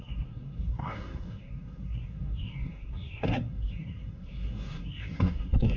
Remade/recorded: remade